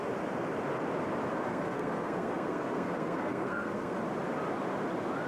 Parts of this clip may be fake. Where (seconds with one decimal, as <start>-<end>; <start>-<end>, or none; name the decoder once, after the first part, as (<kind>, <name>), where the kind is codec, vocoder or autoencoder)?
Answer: 1.5-4.0 (codec, SNAC)